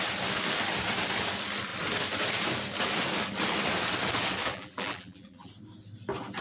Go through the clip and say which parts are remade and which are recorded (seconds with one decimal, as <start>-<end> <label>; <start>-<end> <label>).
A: 0.0-4.5 recorded; 4.5-5.5 remade; 5.5-6.4 recorded